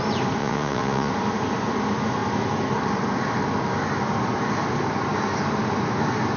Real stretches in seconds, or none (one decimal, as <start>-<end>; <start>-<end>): 0.0-0.4; 1.1-6.4